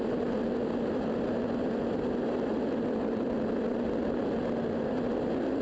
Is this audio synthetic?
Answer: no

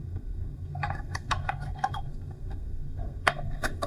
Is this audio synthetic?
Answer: yes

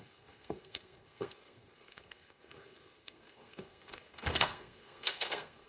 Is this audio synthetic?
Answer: yes